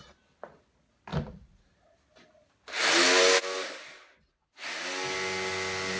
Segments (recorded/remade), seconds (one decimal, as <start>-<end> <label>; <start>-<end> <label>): 0.0-6.0 recorded